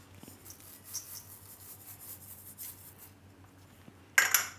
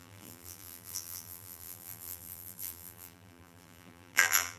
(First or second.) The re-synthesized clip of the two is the second